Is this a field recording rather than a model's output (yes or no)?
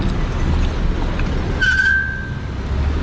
yes